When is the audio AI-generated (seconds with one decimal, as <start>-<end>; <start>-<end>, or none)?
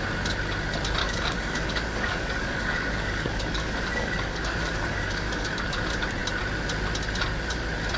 1.0-5.8